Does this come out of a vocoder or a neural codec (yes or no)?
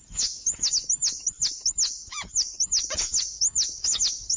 yes